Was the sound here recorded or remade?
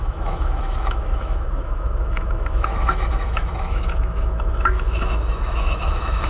remade